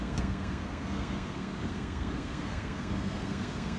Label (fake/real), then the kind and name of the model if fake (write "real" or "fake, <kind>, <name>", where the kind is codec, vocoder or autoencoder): fake, codec, SNAC